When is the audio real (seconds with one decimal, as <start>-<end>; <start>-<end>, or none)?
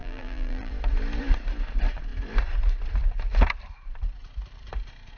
0.7-5.2